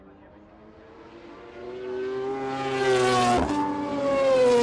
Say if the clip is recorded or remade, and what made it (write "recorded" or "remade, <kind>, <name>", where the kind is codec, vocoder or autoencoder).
recorded